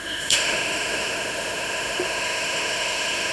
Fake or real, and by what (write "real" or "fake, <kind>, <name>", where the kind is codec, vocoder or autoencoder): fake, autoencoder, DAC-VAE